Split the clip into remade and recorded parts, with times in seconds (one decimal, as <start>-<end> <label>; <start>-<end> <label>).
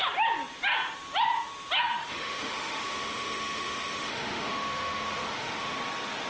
0.0-2.0 recorded; 2.0-5.8 remade; 5.8-6.3 recorded